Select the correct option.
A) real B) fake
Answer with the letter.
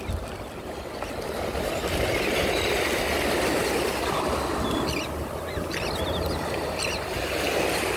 A